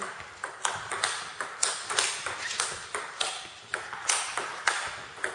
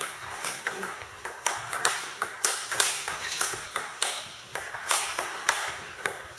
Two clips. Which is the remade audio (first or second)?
second